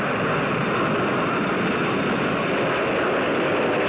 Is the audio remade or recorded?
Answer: recorded